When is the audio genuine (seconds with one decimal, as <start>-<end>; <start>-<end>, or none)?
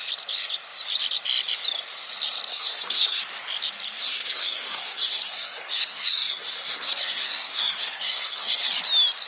0.0-2.5; 3.2-4.0; 8.7-9.3